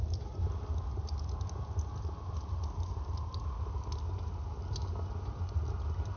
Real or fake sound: real